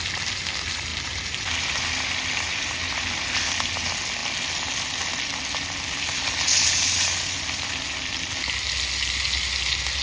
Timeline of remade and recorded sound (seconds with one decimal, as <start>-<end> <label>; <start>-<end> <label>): 0.0-0.9 recorded; 0.9-1.4 remade; 1.4-10.0 recorded